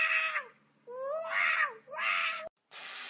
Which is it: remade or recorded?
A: recorded